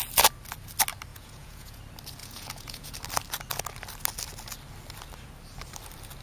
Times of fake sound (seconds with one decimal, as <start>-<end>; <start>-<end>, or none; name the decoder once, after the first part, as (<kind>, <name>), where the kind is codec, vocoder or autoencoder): 1.1-1.8 (vocoder, Vocos); 2.2-2.9